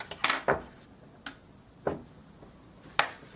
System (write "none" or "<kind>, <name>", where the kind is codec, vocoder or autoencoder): none